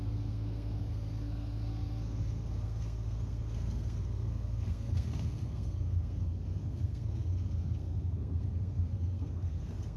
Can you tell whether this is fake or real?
fake